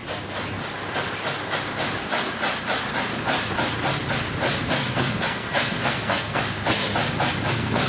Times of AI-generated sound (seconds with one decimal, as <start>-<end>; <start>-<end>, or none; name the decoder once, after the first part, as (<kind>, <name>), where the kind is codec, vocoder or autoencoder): 4.7-6.4 (codec, SNAC); 7.5-7.9